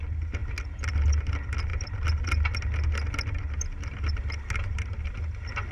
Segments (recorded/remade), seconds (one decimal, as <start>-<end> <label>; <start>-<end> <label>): 0.0-5.7 recorded

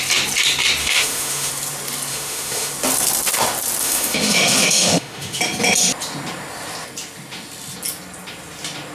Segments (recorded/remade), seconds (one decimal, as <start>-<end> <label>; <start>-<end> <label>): 0.0-0.8 recorded; 0.8-1.5 remade; 1.5-2.1 recorded; 2.1-2.7 remade; 2.7-3.8 recorded; 3.8-5.4 remade; 5.4-8.9 recorded